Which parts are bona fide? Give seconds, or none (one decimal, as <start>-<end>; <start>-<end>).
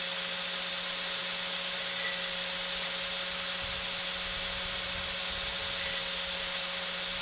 0.0-7.2